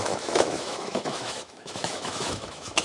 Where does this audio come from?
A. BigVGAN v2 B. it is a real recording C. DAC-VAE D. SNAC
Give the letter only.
C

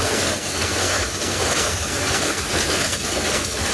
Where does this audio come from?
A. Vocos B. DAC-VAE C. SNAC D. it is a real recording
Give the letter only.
C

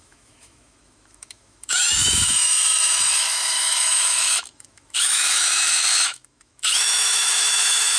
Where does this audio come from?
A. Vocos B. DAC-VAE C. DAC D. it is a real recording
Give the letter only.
B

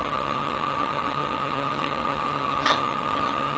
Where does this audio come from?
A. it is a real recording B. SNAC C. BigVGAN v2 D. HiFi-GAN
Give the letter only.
D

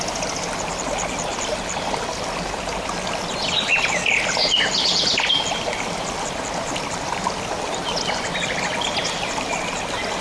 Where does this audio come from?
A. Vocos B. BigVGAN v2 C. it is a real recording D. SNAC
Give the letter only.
C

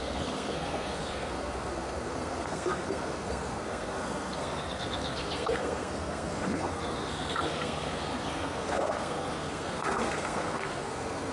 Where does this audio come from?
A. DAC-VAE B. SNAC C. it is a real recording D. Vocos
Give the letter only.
B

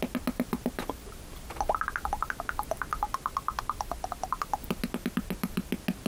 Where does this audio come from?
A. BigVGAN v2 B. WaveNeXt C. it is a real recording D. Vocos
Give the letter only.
C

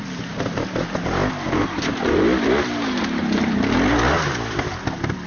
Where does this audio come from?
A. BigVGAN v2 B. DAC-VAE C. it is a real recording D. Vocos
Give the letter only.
C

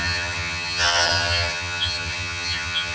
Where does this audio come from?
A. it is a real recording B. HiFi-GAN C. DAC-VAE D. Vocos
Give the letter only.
B